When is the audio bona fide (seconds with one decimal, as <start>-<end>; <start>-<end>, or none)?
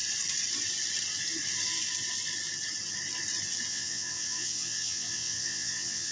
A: 0.0-3.7